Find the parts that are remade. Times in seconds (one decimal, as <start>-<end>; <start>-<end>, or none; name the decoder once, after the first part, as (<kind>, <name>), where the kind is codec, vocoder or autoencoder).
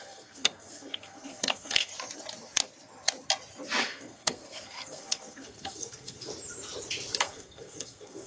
0.0-1.9 (codec, SNAC); 3.8-6.3; 7.2-8.3